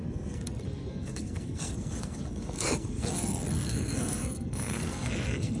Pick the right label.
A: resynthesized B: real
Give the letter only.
A